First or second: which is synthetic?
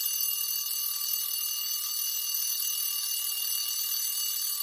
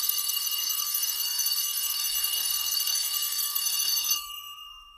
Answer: second